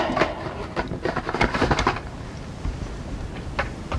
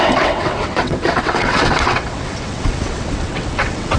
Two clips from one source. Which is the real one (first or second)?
first